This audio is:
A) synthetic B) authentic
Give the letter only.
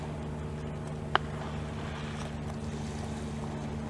B